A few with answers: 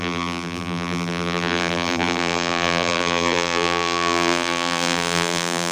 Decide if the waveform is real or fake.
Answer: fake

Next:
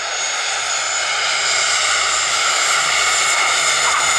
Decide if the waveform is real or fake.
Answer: real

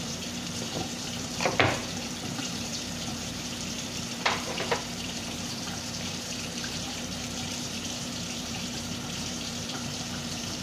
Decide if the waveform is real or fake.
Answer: fake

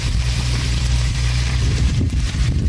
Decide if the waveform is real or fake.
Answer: fake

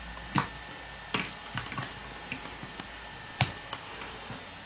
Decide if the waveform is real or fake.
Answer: real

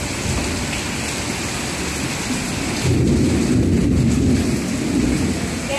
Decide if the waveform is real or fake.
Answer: real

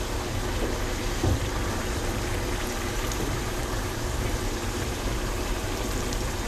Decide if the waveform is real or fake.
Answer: fake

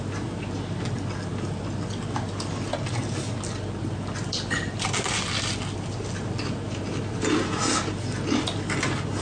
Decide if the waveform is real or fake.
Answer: real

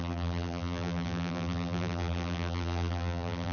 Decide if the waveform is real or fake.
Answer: fake